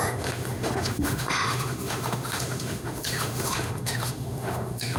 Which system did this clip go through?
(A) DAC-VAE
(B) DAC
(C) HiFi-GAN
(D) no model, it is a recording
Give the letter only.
A